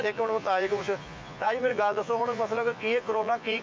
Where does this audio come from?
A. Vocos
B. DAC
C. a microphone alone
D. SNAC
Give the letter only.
A